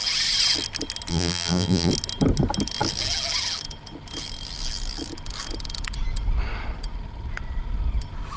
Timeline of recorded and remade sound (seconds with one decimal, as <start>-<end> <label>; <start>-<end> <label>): 0.0-1.1 recorded; 1.1-1.9 remade; 1.9-8.4 recorded